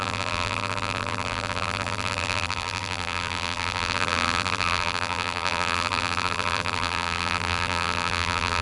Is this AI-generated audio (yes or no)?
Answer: yes